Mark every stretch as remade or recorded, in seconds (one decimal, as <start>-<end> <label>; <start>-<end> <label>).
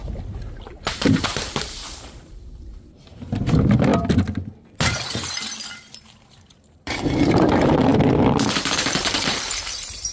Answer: 0.0-0.9 recorded; 0.9-3.9 remade; 3.9-5.9 recorded; 5.9-7.9 remade; 7.9-8.6 recorded; 8.6-10.1 remade